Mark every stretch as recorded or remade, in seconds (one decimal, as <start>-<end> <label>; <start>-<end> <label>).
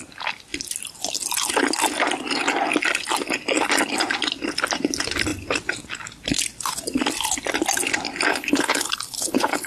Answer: 0.0-8.3 recorded; 8.3-9.7 remade